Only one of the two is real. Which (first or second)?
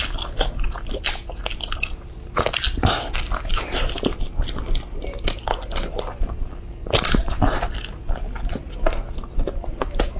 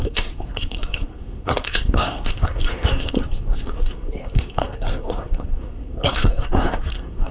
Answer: first